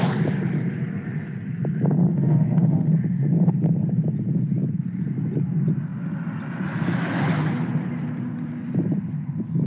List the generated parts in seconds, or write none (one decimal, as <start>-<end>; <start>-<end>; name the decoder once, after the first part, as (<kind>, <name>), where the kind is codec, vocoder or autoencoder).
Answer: 2.1-2.9 (autoencoder, DAC-VAE)